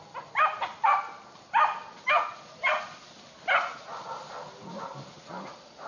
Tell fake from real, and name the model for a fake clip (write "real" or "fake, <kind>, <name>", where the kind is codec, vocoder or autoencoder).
real